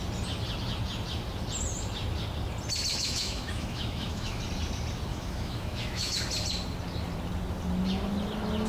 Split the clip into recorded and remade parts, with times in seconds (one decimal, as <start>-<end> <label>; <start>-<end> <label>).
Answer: 0.0-2.9 recorded; 2.9-4.4 remade; 4.4-5.1 recorded; 5.1-6.2 remade; 6.2-8.7 recorded